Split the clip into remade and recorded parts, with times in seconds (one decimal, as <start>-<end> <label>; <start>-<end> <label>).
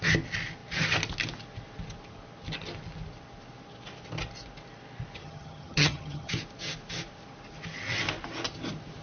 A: 0.0-5.2 recorded; 5.2-6.3 remade; 6.3-9.0 recorded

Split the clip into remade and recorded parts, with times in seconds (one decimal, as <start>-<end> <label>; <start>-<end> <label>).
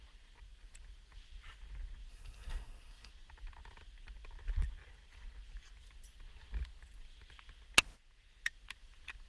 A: 0.0-2.1 recorded; 2.1-3.1 remade; 3.1-9.3 recorded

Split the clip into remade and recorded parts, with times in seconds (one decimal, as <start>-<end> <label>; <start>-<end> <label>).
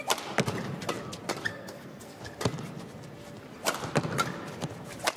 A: 0.0-1.5 recorded; 1.5-2.2 remade; 2.2-5.2 recorded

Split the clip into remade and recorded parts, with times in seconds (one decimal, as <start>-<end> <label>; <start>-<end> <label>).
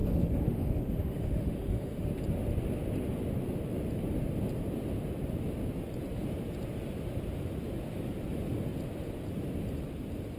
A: 0.0-2.1 remade; 2.1-10.4 recorded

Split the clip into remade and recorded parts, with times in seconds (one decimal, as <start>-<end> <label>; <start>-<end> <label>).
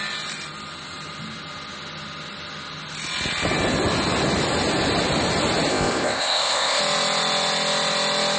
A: 0.0-5.7 recorded; 5.7-6.8 remade; 6.8-8.4 recorded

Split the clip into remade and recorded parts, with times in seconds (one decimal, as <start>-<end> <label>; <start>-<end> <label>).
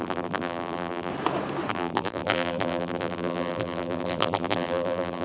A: 0.0-1.1 remade; 1.1-1.7 recorded; 1.7-5.2 remade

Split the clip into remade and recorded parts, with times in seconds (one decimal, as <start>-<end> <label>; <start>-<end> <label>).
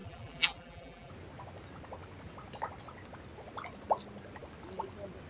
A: 0.0-1.1 remade; 1.1-5.3 recorded